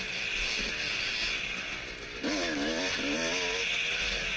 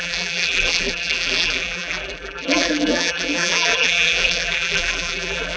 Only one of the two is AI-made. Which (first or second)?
second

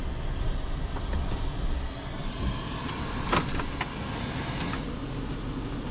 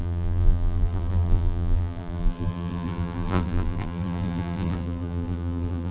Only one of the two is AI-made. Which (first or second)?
second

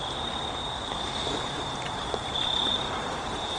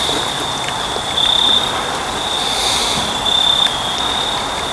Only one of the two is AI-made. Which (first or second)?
first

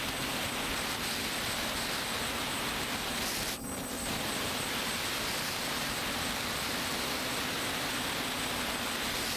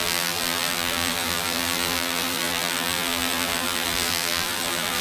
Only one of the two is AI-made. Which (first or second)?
second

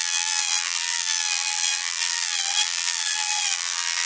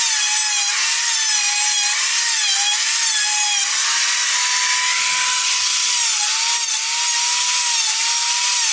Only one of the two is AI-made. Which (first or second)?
first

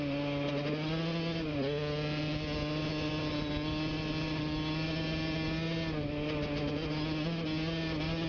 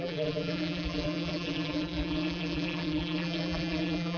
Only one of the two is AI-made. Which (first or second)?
second